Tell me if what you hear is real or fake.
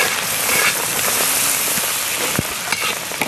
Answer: real